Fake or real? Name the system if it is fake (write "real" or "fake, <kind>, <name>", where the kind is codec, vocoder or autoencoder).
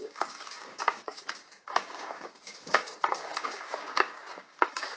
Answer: fake, codec, DAC